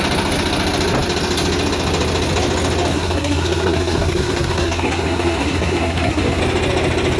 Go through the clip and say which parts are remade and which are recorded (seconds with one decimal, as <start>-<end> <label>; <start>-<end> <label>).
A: 0.0-2.9 recorded; 2.9-6.4 remade; 6.4-7.2 recorded